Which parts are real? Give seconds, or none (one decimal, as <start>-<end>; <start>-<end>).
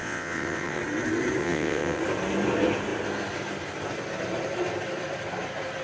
0.8-1.4; 2.0-5.8